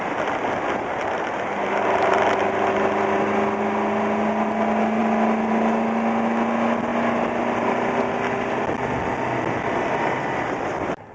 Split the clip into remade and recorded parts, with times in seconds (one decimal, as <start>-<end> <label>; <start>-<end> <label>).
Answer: 0.0-11.1 recorded